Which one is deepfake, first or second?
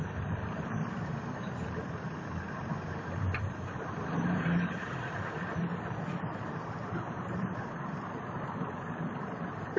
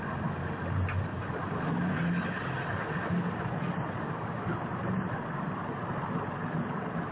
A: first